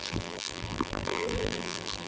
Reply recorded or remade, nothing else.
remade